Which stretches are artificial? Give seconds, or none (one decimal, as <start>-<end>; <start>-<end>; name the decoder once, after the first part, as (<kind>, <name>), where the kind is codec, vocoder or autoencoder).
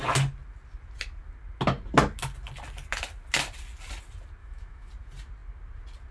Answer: 4.4-4.9 (autoencoder, DAC-VAE)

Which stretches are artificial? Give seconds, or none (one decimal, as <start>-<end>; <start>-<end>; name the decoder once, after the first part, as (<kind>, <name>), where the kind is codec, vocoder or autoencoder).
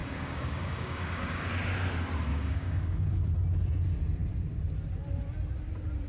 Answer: 0.0-1.5 (codec, DAC); 2.3-3.1